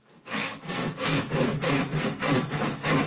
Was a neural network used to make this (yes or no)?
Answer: yes